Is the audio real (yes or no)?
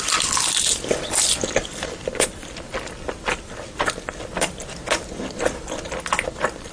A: yes